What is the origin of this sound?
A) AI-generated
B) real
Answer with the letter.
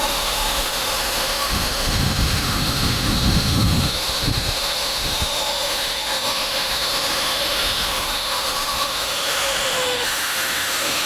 A